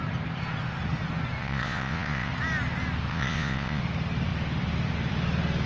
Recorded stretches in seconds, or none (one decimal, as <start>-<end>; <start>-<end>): 0.0-1.4; 2.3-3.1; 3.8-5.7